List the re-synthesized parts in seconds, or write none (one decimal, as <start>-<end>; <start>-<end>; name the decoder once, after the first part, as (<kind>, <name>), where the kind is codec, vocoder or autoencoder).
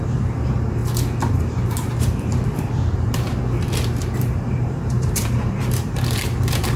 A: 0.0-0.8 (vocoder, BigVGAN v2); 1.3-6.8